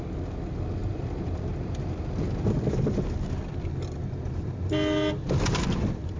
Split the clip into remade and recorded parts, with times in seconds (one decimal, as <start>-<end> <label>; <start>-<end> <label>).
0.0-6.2 recorded